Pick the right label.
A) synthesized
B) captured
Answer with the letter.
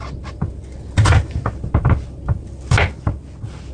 B